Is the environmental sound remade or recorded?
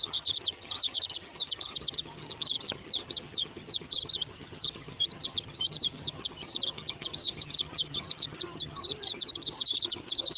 remade